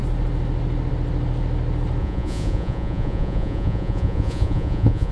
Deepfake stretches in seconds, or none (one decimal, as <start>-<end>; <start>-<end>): 2.0-5.1